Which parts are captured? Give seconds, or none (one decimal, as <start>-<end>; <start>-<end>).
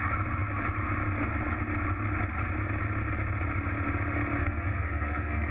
0.0-4.4